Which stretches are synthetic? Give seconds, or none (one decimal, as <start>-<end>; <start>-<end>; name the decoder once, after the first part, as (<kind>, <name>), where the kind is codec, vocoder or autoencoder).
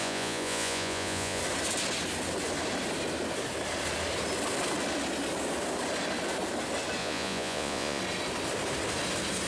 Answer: 0.0-1.4 (vocoder, Vocos); 7.0-8.0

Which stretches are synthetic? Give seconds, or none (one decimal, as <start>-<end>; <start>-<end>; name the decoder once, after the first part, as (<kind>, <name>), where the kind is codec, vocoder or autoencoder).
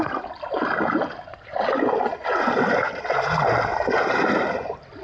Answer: none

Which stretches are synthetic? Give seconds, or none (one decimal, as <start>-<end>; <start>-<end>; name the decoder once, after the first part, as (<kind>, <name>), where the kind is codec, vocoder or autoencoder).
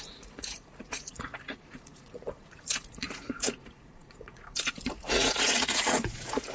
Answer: 0.0-6.5 (vocoder, Vocos)